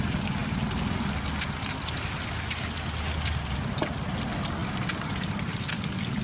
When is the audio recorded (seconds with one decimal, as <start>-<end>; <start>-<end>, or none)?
0.4-4.1